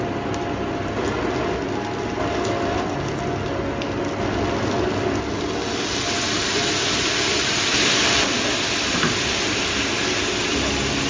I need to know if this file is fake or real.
real